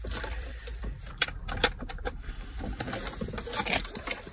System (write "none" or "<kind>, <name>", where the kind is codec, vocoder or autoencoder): vocoder, BigVGAN v2